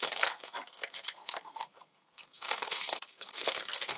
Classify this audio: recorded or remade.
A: remade